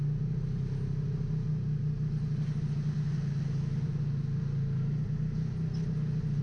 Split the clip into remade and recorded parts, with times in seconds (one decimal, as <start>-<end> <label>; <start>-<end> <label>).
0.0-6.4 recorded